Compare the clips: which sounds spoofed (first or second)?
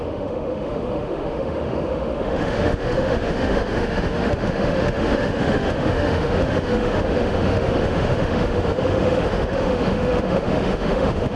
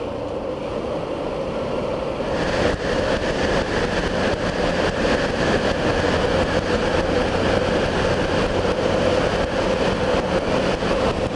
first